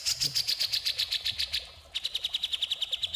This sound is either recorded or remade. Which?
recorded